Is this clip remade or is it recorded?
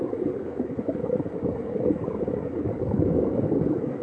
remade